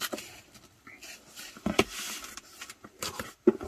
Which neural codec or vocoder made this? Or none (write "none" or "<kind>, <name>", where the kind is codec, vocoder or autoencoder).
none